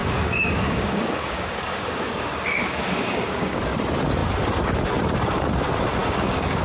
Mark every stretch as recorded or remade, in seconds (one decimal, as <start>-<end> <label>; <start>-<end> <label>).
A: 0.0-3.6 remade; 3.6-6.0 recorded; 6.0-6.6 remade